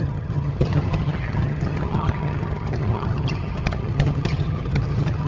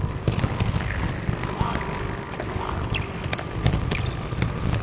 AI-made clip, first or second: first